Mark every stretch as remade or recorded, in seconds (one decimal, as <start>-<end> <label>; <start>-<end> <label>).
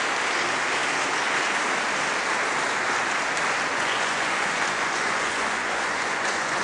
0.0-3.7 recorded; 3.7-6.6 remade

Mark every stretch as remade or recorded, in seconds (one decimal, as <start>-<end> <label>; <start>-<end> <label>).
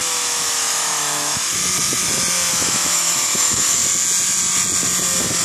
0.0-1.6 remade; 1.6-2.5 recorded; 2.5-3.8 remade; 3.8-5.4 recorded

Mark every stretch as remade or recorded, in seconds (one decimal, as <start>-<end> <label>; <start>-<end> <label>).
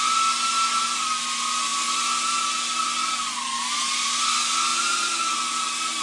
0.0-6.0 recorded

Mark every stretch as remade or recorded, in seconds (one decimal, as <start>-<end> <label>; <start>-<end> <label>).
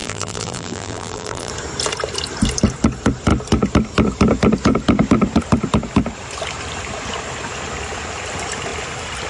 0.0-1.5 remade; 1.5-9.3 recorded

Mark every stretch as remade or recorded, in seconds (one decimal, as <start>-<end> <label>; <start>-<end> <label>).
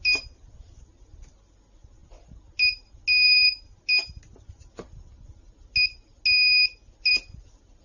0.0-7.8 recorded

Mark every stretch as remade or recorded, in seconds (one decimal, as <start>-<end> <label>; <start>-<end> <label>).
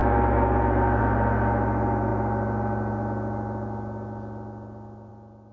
0.0-5.5 recorded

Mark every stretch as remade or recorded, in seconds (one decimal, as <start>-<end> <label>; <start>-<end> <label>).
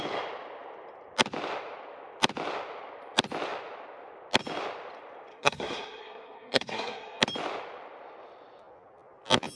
0.0-5.3 recorded; 5.3-7.2 remade; 7.2-9.5 recorded